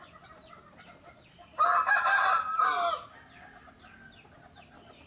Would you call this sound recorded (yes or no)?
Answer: yes